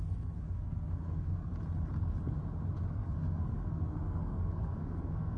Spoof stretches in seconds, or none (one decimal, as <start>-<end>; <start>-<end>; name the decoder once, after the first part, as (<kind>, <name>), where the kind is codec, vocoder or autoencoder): 0.0-1.5 (codec, SNAC); 2.9-5.4